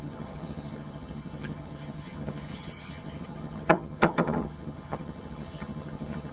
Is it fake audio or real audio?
fake